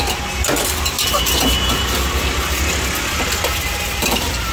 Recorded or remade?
recorded